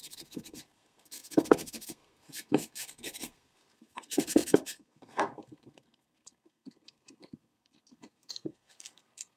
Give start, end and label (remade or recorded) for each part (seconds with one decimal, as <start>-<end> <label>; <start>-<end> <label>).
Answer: 0.0-9.4 remade